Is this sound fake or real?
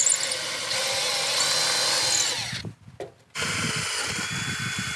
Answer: real